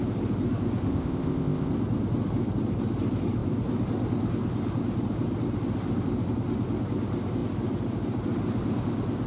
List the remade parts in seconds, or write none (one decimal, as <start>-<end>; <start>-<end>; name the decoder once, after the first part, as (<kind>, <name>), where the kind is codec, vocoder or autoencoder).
0.8-1.7 (codec, ZipCodec)